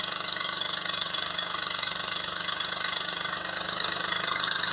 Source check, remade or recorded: remade